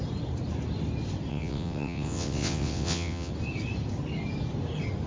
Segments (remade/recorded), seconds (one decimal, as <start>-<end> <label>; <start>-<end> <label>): 0.0-1.3 recorded; 1.3-3.3 remade; 3.3-5.1 recorded